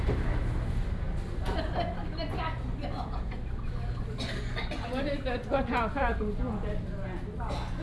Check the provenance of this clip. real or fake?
real